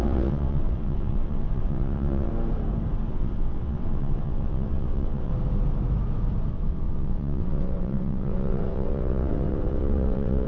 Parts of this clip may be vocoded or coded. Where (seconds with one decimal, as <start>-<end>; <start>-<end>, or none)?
0.0-2.3; 3.1-5.3; 6.5-10.5